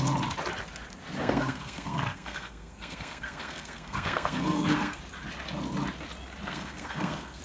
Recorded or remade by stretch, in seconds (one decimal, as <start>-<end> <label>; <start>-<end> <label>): 0.0-1.2 recorded; 1.2-5.0 remade; 5.0-6.5 recorded; 6.5-7.4 remade